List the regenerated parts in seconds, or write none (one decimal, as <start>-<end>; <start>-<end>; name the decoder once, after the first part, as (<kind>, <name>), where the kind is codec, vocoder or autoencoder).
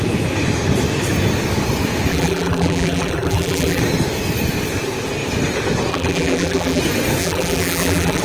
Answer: 2.1-3.8 (vocoder, BigVGAN v2); 5.9-6.8; 7.2-8.2